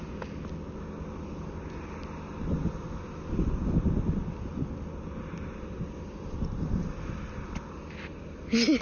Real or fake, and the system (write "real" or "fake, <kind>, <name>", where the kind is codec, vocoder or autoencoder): real